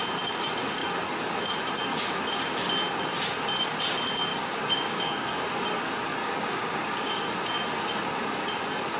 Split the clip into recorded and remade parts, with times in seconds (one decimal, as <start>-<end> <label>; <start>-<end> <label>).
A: 0.0-4.3 recorded; 4.3-5.4 remade; 5.4-6.2 recorded; 6.2-7.2 remade; 7.2-9.0 recorded